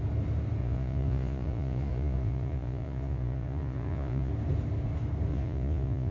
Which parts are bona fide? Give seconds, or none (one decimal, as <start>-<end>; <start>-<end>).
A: 0.0-0.6; 4.3-5.3